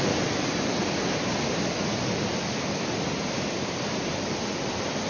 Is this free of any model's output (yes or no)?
no